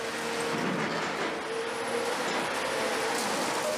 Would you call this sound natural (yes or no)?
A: yes